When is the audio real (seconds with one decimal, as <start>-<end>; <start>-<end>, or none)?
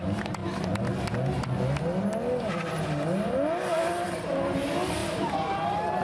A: 0.0-6.0